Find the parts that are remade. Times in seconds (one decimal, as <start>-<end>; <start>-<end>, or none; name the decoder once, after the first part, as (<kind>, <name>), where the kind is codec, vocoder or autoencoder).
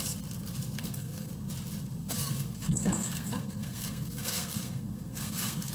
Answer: 0.8-1.3 (codec, SNAC); 2.0-5.7